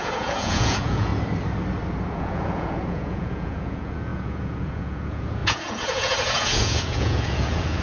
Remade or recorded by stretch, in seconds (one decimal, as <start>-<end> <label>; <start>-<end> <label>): 0.0-1.1 remade; 1.1-2.1 recorded; 2.1-7.8 remade